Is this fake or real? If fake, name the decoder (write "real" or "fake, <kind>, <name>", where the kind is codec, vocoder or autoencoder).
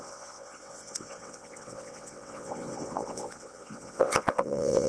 fake, vocoder, WaveNeXt